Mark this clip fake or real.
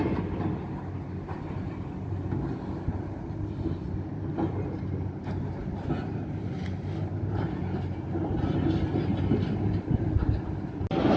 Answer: real